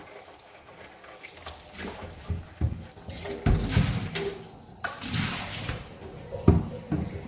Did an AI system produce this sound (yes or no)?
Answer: no